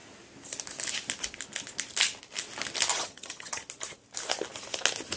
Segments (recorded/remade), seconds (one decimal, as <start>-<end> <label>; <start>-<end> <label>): 0.0-2.9 recorded; 2.9-3.6 remade; 3.6-5.2 recorded